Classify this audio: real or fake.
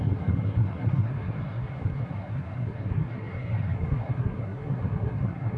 fake